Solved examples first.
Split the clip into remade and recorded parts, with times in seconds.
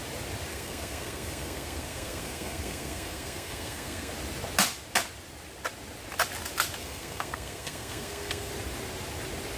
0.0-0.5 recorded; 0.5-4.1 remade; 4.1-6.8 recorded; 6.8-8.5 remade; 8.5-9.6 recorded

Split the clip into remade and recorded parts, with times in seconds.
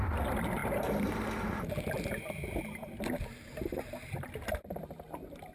0.0-5.5 recorded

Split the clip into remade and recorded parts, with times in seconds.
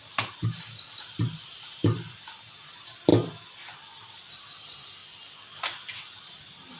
0.0-3.1 remade; 3.1-4.0 recorded; 4.0-5.0 remade; 5.0-6.8 recorded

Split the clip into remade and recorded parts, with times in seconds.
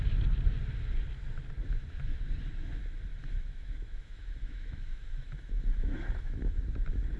0.0-3.1 recorded; 3.1-6.6 remade; 6.6-7.2 recorded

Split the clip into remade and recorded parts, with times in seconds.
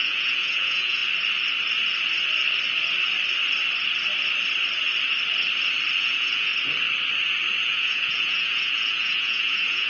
0.0-1.0 remade; 1.0-6.0 recorded; 6.0-6.5 remade; 6.5-7.6 recorded; 7.6-9.9 remade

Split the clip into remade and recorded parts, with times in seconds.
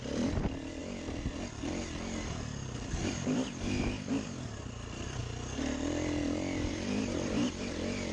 0.0-0.8 remade; 0.8-3.0 recorded; 3.0-5.2 remade; 5.2-6.7 recorded; 6.7-8.1 remade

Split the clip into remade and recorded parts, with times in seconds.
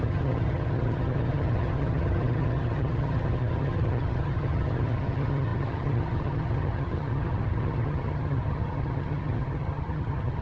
0.0-10.4 remade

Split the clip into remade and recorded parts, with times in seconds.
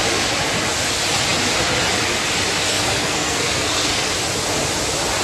0.0-2.7 recorded; 2.7-4.1 remade; 4.1-5.2 recorded